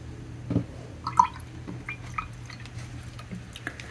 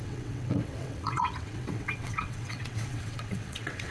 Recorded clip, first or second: first